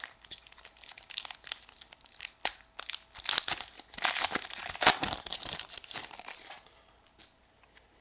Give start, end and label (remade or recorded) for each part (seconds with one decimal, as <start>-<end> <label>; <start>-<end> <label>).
0.0-5.3 recorded; 5.3-7.4 remade; 7.4-8.0 recorded